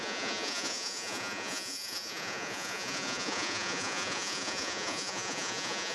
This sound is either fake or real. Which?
fake